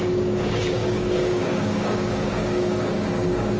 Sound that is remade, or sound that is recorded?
remade